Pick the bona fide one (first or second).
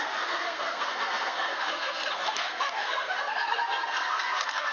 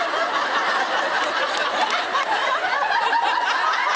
second